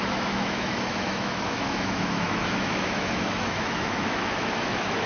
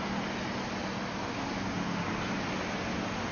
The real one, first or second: second